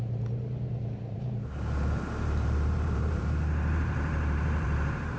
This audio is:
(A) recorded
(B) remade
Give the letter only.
B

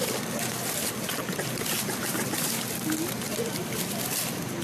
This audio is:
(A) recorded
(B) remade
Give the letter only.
A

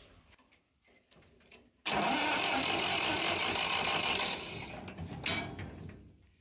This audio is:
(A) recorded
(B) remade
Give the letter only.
A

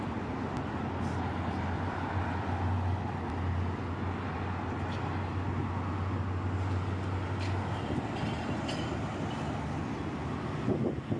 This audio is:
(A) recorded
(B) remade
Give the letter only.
A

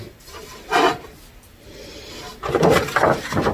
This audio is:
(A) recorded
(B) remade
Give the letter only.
B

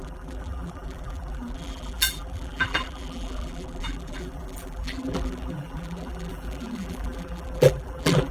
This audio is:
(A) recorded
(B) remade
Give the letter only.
B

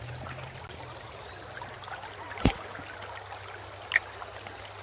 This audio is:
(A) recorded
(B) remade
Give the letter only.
A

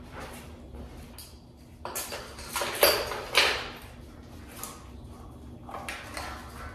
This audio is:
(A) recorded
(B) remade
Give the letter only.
A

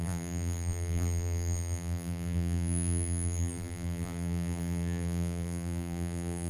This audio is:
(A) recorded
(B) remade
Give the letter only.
B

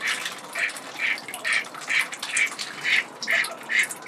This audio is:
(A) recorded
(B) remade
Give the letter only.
B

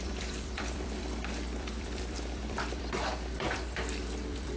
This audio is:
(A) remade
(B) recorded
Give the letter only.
A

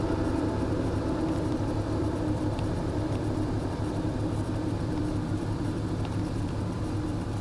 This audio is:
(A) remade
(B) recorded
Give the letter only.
A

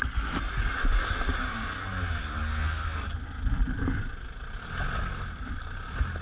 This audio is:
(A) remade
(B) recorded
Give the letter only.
B